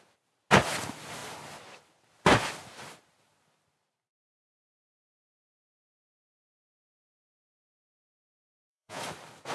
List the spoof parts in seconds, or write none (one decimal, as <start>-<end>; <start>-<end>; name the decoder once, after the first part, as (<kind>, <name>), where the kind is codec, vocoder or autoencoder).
8.2-9.0 (vocoder, Vocos)